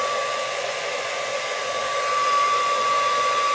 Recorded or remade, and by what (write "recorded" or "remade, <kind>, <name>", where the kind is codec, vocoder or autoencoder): remade, vocoder, Vocos